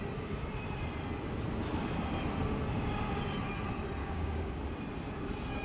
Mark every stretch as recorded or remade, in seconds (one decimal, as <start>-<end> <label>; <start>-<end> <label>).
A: 0.0-4.0 recorded; 4.0-4.5 remade; 4.5-5.6 recorded

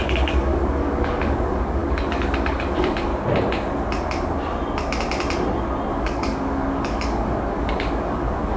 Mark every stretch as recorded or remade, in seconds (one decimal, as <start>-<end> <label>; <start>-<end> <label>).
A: 0.0-3.1 remade; 3.1-5.9 recorded; 5.9-8.6 remade

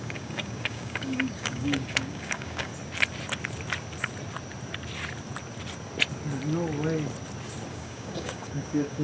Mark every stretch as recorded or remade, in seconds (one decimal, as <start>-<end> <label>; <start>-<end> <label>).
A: 0.0-2.7 remade; 2.7-7.7 recorded; 7.7-9.0 remade

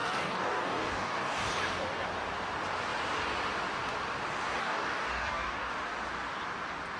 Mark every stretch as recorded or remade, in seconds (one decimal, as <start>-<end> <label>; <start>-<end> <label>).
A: 0.0-1.5 remade; 1.5-4.6 recorded; 4.6-5.7 remade; 5.7-7.0 recorded

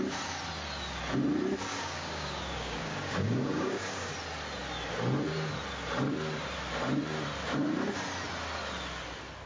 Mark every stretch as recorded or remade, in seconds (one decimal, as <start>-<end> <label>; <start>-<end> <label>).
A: 0.0-1.7 recorded; 1.7-4.1 remade; 4.1-9.5 recorded

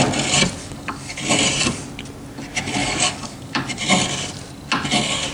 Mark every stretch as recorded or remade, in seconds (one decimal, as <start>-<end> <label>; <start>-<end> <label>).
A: 0.0-0.6 recorded; 0.6-1.2 remade; 1.2-2.8 recorded; 2.8-3.8 remade; 3.8-5.3 recorded

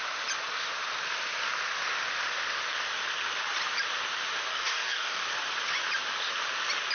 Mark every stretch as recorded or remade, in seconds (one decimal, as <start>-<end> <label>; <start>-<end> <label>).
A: 0.0-4.5 recorded; 4.5-5.2 remade; 5.2-6.9 recorded

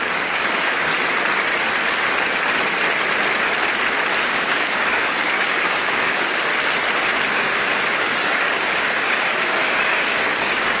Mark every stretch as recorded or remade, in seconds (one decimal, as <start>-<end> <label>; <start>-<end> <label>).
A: 0.0-0.9 remade; 0.9-4.2 recorded; 4.2-6.5 remade; 6.5-7.3 recorded; 7.3-10.8 remade